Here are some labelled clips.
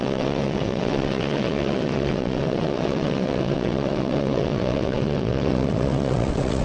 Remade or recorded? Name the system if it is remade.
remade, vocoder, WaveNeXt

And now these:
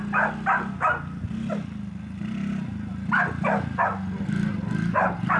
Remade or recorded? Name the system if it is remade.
recorded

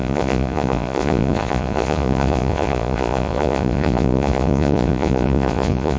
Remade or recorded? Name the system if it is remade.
remade, vocoder, Vocos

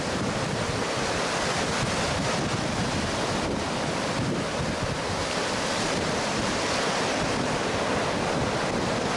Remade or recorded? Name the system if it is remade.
recorded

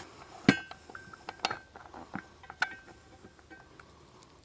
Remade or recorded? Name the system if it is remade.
recorded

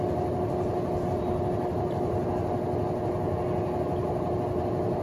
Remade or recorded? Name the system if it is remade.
recorded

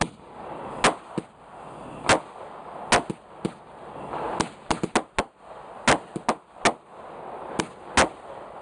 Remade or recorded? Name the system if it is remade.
recorded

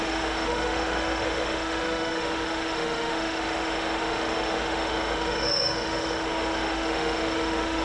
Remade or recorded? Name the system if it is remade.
remade, autoencoder, DAC-VAE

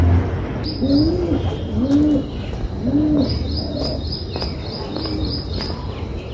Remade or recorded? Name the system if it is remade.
recorded